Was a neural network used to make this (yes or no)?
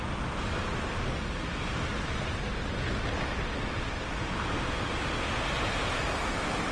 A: no